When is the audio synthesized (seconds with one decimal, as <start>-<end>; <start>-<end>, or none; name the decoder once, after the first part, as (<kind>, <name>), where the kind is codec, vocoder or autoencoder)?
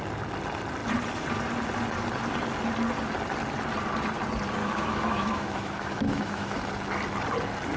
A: 4.6-6.6 (autoencoder, DAC-VAE)